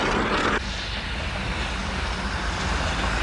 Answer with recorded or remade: recorded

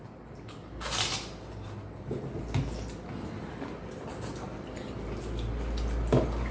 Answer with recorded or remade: recorded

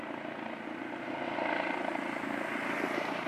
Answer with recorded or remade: recorded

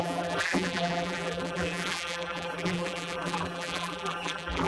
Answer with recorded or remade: remade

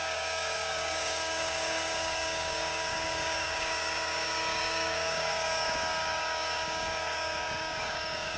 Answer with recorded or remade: remade